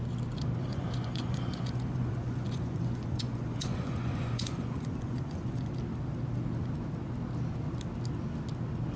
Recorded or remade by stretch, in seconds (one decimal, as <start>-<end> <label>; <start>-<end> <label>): 0.0-0.6 recorded; 0.6-5.7 remade; 5.7-9.0 recorded